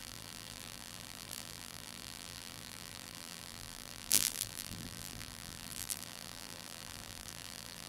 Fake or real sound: fake